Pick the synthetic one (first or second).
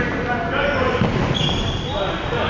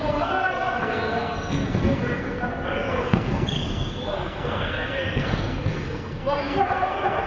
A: second